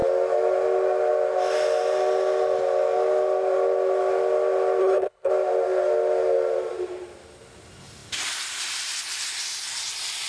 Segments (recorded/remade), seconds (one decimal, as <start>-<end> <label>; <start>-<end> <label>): 0.0-4.8 recorded; 4.8-5.3 remade; 5.3-10.3 recorded